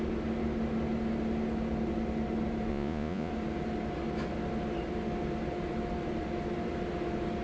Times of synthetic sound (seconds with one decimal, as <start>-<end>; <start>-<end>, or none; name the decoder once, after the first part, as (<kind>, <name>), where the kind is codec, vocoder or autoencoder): 2.7-3.3 (vocoder, Vocos)